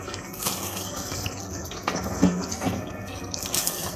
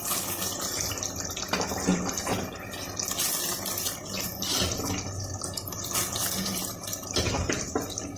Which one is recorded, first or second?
second